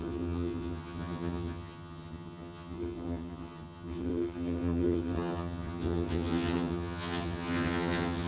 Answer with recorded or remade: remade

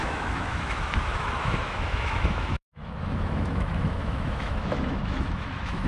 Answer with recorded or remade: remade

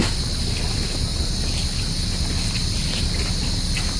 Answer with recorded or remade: recorded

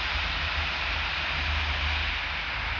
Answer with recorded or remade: recorded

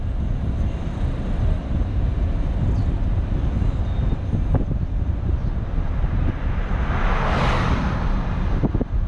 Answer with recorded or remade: recorded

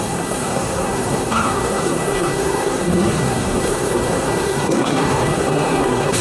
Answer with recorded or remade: remade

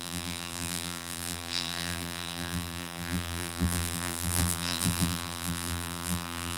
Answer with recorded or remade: remade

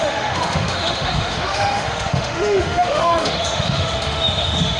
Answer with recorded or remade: remade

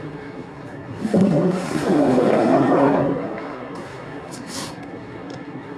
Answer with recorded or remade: remade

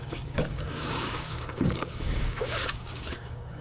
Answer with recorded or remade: remade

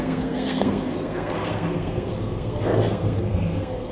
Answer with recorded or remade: remade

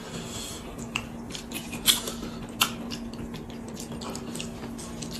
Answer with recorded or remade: recorded